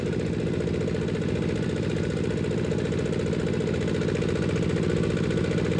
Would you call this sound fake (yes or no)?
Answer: no